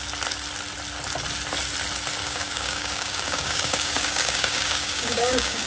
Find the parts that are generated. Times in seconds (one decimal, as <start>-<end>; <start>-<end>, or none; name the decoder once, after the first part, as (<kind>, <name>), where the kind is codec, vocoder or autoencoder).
2.2-5.7 (codec, DAC)